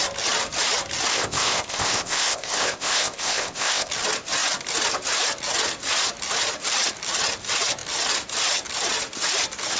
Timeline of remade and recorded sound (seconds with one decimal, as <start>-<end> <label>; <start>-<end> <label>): 0.0-1.1 recorded; 1.1-3.9 remade; 3.9-9.8 recorded